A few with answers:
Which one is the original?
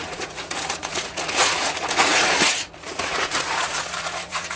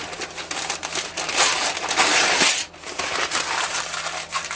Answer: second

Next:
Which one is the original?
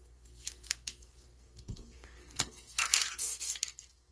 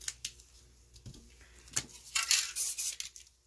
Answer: second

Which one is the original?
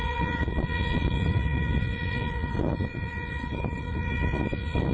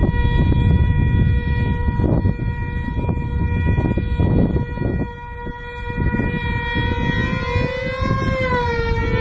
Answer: second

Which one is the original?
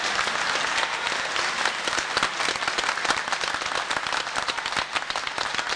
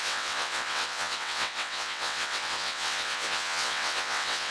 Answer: first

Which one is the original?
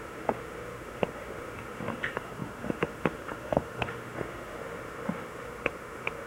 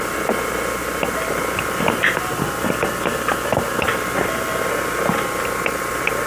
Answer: second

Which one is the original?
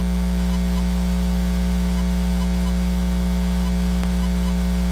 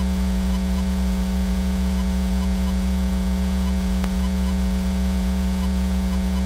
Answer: first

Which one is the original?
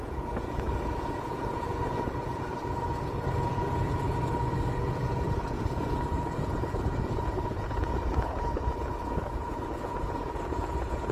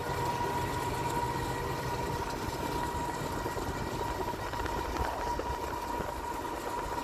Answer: second